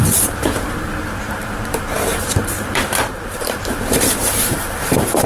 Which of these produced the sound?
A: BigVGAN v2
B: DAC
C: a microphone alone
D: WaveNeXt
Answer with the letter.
A